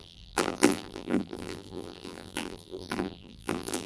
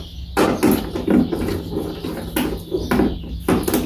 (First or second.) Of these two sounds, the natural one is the second